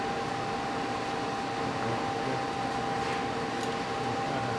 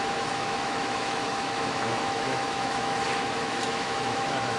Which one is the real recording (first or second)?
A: first